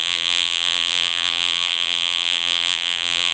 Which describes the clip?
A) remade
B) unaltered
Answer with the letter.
A